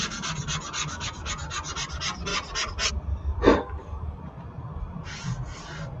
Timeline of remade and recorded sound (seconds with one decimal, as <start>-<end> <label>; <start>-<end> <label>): 0.0-0.8 recorded; 0.8-1.3 remade; 1.3-3.5 recorded; 3.5-4.2 remade; 4.2-6.0 recorded